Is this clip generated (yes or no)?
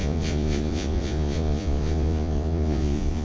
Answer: yes